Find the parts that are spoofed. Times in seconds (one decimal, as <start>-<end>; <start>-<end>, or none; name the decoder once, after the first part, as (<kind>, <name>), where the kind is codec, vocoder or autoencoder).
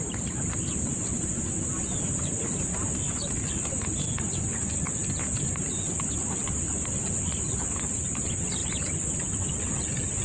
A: none